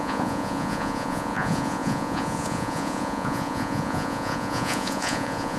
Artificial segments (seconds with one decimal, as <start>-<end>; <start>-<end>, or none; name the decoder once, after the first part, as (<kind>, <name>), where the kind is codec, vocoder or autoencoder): 0.0-5.6 (vocoder, Vocos)